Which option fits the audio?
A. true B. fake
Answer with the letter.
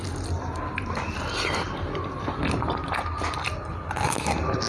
A